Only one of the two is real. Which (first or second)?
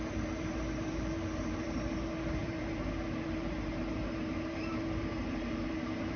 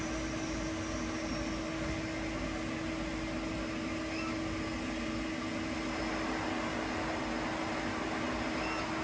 second